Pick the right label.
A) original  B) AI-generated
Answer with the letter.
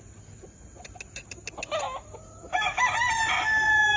A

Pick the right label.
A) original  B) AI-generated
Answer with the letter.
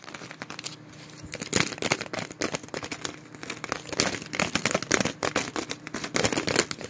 A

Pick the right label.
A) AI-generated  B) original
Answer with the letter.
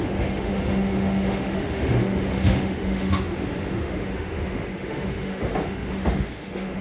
A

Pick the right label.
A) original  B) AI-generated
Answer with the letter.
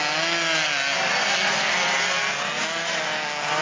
A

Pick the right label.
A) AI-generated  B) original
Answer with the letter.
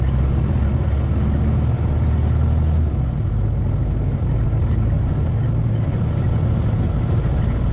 B